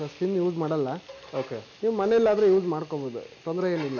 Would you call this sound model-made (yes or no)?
no